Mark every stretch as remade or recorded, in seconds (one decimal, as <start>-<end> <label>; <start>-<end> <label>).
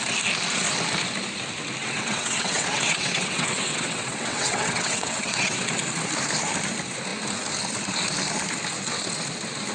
0.0-1.8 recorded; 1.8-5.7 remade; 5.7-9.7 recorded